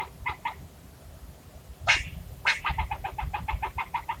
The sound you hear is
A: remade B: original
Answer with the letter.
B